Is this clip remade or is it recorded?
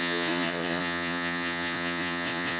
remade